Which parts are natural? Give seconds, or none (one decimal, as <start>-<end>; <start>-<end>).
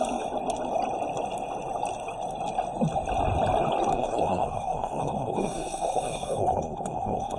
0.0-3.9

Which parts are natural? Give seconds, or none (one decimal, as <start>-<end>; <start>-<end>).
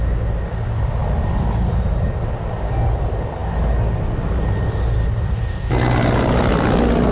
0.0-7.1